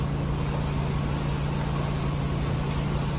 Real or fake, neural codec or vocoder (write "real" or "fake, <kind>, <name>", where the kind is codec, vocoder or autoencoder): real